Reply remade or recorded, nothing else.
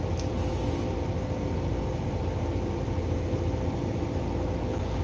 recorded